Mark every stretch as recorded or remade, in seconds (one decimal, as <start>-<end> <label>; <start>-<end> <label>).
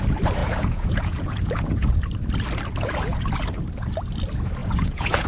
0.0-0.4 recorded; 0.4-1.9 remade; 1.9-4.6 recorded; 4.6-5.3 remade